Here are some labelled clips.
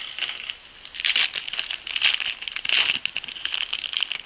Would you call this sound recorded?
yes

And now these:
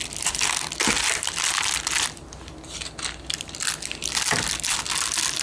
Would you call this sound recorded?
yes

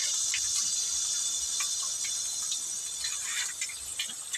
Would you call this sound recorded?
yes